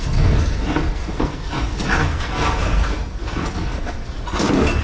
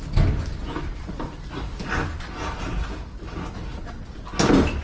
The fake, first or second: first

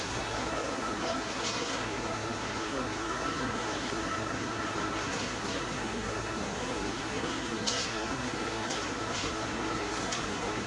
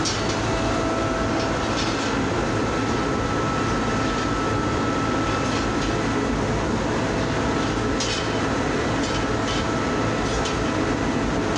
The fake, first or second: first